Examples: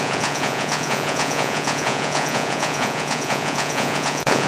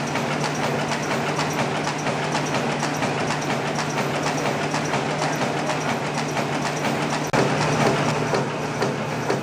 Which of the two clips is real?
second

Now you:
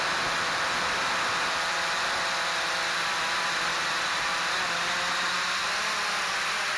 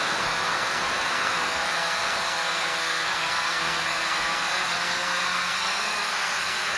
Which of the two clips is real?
first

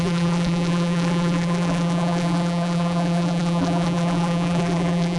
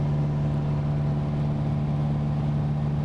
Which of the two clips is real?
second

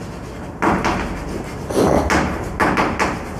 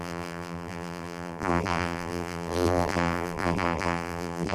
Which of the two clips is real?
first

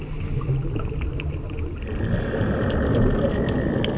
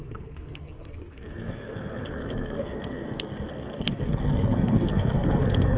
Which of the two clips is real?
first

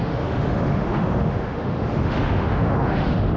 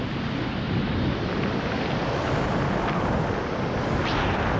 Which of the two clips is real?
second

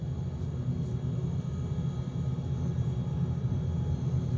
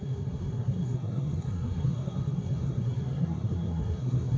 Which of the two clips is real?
first